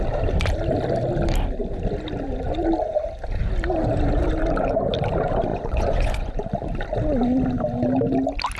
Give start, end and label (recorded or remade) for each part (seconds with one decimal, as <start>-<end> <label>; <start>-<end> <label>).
0.0-5.5 recorded; 5.5-6.4 remade; 6.4-8.6 recorded